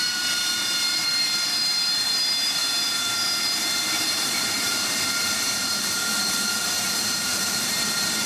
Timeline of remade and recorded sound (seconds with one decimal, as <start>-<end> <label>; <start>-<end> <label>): 0.0-2.6 remade; 2.6-3.6 recorded; 3.6-6.0 remade; 6.0-6.8 recorded; 6.8-8.3 remade